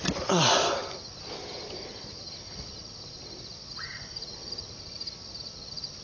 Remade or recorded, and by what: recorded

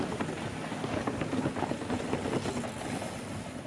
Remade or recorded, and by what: recorded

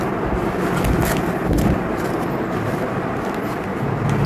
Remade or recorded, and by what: recorded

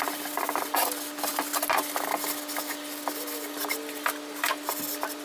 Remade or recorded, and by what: recorded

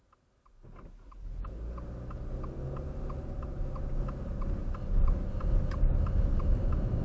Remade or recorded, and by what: recorded